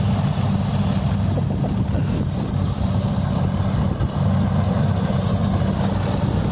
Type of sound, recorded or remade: recorded